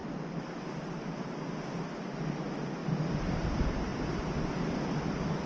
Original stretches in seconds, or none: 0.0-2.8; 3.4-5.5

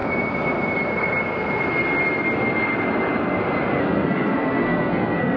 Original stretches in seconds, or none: 0.0-3.8